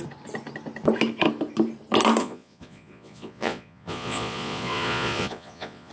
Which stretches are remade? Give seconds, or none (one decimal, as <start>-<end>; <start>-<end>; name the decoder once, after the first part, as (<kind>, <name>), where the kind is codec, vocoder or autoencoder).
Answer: 2.2-5.9 (vocoder, Vocos)